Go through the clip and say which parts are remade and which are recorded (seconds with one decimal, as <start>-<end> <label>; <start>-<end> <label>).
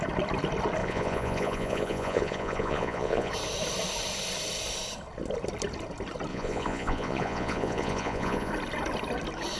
0.0-0.8 recorded; 0.8-3.3 remade; 3.3-6.3 recorded; 6.3-8.5 remade; 8.5-9.6 recorded